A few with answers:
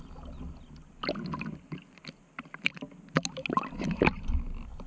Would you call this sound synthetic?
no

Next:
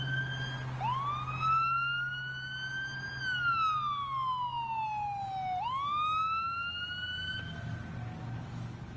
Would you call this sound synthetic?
no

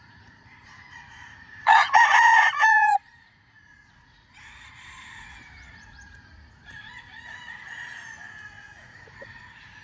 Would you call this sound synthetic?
yes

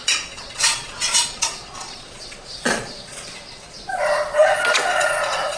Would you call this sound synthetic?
yes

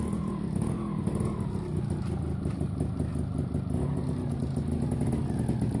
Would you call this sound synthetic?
no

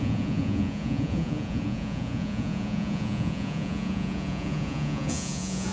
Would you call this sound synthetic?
yes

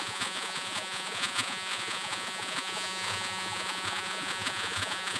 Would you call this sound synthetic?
yes